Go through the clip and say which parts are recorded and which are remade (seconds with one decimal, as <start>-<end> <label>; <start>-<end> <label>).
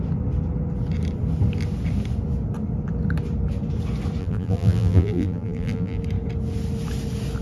0.0-4.2 recorded; 4.2-6.0 remade; 6.0-7.4 recorded